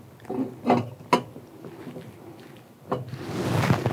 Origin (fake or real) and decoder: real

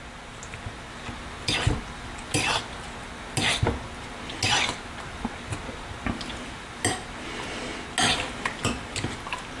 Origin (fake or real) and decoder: real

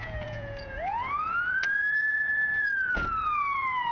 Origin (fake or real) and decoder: fake, vocoder, Vocos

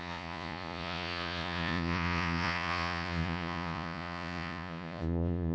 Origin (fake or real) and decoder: fake, vocoder, Vocos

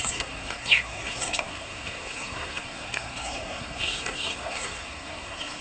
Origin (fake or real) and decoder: fake, codec, SNAC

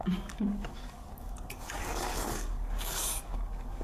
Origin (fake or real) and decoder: fake, codec, DAC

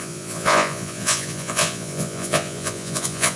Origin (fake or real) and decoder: fake, vocoder, Vocos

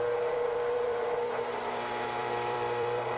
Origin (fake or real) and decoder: fake, vocoder, BigVGAN v2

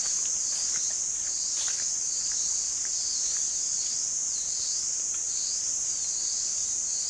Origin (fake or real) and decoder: real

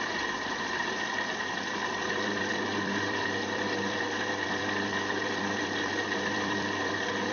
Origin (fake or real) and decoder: fake, vocoder, BigVGAN v2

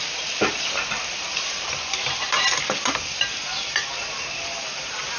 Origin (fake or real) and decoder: real